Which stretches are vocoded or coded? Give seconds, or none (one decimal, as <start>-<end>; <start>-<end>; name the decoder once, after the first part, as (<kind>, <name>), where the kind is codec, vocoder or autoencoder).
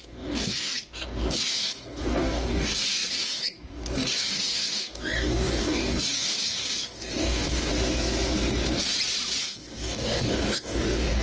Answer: 0.0-7.7 (codec, DAC); 9.4-11.2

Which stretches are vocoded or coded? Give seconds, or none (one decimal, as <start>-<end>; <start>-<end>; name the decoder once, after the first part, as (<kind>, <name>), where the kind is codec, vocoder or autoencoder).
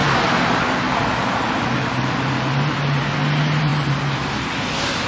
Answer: 0.0-3.1 (vocoder, BigVGAN v2); 3.7-4.5